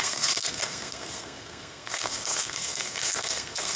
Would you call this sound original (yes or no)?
no